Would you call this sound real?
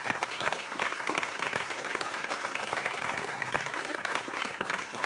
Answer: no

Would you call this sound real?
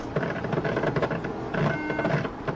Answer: yes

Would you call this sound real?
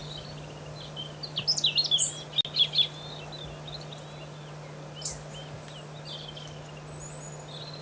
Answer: yes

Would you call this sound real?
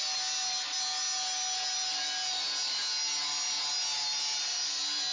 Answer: yes